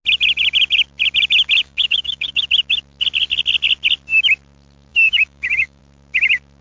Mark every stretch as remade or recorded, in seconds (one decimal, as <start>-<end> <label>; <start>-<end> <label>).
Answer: 0.0-1.6 recorded; 1.6-2.4 remade; 2.4-4.9 recorded; 4.9-5.8 remade; 5.8-6.6 recorded